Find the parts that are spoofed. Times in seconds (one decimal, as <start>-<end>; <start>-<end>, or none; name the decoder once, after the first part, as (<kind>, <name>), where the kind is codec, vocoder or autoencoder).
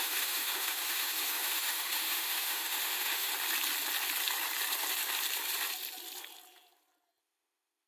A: 0.0-3.3 (autoencoder, DAC-VAE); 7.2-7.9